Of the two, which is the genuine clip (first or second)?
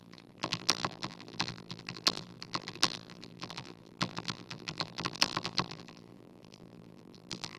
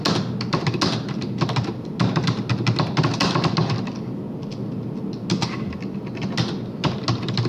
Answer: second